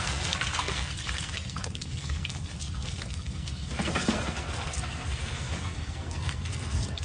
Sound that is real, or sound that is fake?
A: fake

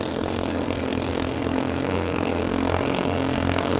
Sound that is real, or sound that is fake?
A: fake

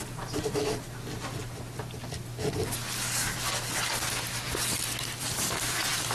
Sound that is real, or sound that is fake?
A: real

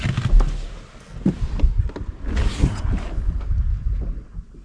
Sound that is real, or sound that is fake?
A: real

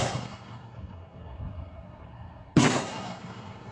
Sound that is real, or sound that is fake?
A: fake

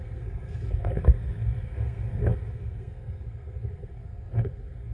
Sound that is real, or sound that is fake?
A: fake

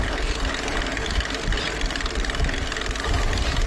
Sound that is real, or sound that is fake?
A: real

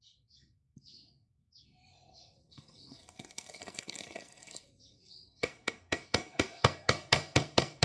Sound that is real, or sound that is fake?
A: fake